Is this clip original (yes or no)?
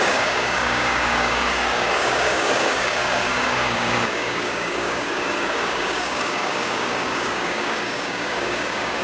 no